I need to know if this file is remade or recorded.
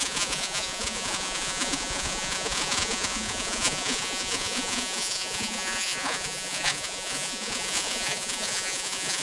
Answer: remade